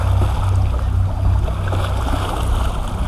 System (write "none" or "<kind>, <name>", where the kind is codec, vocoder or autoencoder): none